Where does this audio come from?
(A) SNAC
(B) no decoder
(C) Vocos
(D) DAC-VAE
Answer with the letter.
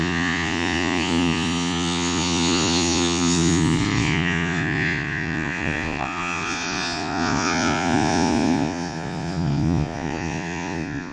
C